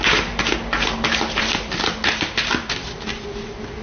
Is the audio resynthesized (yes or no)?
no